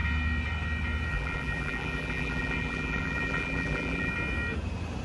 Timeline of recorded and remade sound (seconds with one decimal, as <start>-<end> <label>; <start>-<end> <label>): 0.0-1.1 recorded; 1.1-4.1 remade; 4.1-5.0 recorded